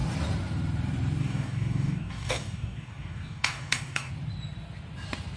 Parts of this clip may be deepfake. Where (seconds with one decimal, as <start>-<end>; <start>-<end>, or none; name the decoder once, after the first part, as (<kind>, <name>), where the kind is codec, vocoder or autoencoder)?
1.2-4.1 (codec, DAC)

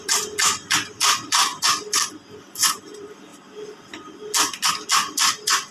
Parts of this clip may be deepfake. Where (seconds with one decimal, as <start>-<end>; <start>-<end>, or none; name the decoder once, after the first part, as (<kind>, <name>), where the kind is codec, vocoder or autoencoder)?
none

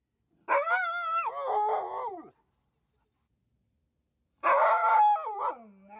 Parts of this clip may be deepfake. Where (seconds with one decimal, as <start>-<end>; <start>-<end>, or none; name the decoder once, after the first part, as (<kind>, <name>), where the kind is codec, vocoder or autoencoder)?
none

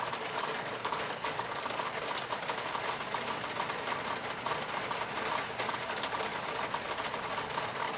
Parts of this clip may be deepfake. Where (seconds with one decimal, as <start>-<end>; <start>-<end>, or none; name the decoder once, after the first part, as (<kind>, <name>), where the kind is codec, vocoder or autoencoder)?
0.0-1.9 (codec, DAC); 5.6-6.3; 7.3-8.0